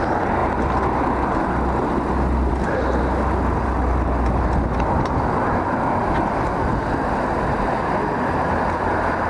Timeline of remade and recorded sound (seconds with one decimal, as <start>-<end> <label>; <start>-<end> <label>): 0.0-9.3 recorded